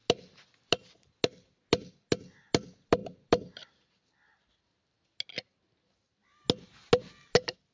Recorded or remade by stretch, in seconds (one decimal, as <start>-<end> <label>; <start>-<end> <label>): 0.0-7.7 recorded